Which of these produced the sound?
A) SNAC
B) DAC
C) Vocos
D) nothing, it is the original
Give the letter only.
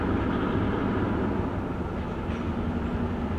D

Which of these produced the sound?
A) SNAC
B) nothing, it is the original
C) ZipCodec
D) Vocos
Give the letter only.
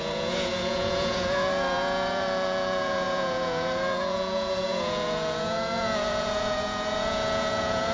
D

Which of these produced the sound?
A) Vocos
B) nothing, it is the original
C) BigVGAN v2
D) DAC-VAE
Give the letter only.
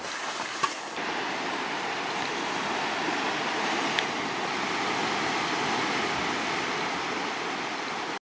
B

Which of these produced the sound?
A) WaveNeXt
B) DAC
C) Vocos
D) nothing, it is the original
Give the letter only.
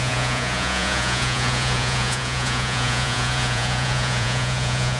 C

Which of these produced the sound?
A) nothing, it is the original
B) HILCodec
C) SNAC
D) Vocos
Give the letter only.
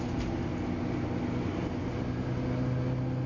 A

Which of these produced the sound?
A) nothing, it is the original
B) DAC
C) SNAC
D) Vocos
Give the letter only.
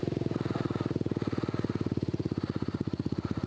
D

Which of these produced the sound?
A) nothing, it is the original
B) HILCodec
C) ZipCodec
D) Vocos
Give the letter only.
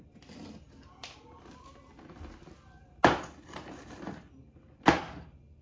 A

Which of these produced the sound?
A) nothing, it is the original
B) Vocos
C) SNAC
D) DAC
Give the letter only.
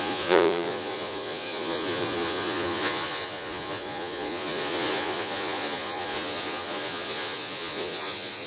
B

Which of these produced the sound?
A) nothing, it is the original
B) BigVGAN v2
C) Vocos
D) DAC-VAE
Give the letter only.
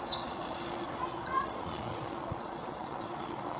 C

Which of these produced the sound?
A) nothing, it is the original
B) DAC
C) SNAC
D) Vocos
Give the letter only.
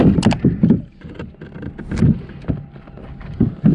A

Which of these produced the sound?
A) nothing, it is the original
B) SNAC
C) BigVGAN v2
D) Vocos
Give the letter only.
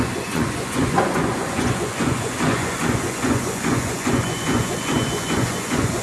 D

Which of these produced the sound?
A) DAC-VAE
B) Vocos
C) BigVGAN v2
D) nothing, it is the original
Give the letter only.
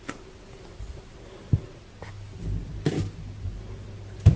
D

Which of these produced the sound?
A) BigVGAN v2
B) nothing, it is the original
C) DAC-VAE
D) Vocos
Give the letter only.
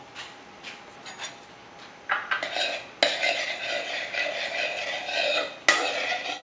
B